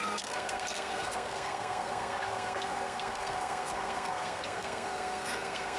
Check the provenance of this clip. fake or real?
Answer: fake